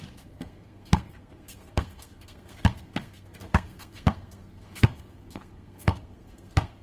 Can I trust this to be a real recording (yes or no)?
no